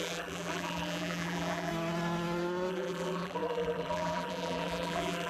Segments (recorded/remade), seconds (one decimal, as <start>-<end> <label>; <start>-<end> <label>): 0.0-1.7 remade; 1.7-2.7 recorded; 2.7-5.3 remade